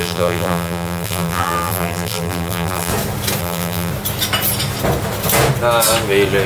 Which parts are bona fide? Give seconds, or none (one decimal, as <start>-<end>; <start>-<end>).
2.9-3.4; 3.9-6.5